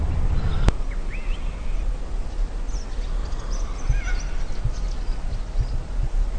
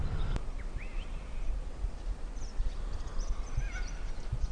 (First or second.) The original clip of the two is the first